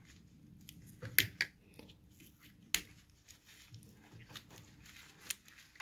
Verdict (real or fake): real